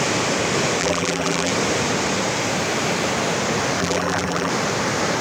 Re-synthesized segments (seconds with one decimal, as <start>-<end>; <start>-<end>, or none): 0.8-1.5; 3.8-4.5